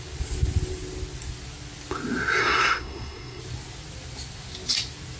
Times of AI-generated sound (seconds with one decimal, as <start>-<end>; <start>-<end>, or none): 2.4-3.4